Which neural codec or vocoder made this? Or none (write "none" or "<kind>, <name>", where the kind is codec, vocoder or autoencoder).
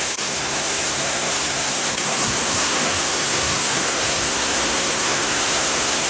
codec, SNAC